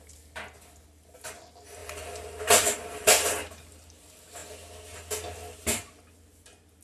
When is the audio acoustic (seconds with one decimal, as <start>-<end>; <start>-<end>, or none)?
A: 0.0-1.8; 3.8-6.8